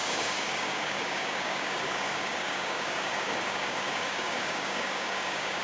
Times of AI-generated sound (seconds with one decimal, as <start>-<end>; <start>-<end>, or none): 0.0-5.6